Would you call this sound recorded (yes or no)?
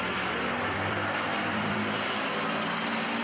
no